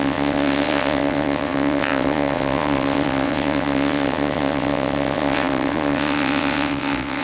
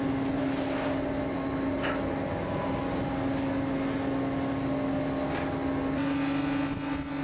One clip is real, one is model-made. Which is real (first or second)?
second